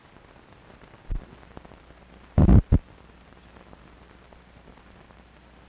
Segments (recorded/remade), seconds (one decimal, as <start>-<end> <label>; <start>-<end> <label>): 0.0-5.7 remade